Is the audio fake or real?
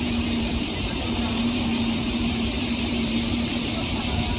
fake